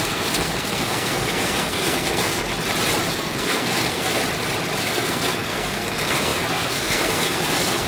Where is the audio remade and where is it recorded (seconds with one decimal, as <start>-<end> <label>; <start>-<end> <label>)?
0.0-2.5 remade; 2.5-3.1 recorded; 3.1-4.2 remade; 4.2-4.8 recorded; 4.8-7.9 remade

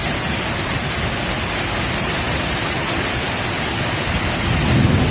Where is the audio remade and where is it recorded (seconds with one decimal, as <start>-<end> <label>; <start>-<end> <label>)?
0.0-5.1 recorded

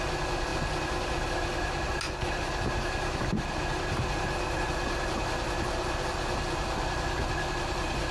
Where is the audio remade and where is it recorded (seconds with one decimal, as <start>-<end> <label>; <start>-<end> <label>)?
0.0-8.1 recorded

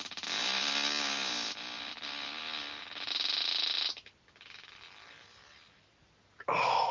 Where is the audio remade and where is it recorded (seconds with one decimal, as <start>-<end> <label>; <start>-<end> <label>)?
0.0-6.9 recorded

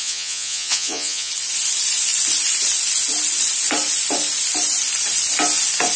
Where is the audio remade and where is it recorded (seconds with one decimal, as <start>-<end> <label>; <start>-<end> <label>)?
0.0-1.3 remade; 1.3-6.0 recorded

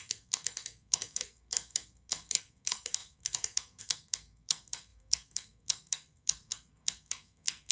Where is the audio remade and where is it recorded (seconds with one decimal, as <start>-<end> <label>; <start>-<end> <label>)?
0.0-7.7 remade